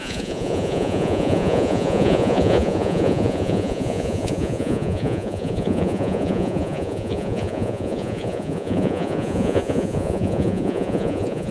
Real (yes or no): no